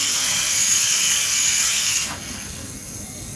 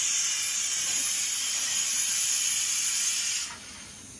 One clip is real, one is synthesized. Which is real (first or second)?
second